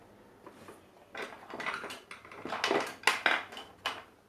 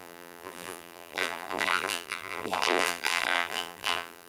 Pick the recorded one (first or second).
first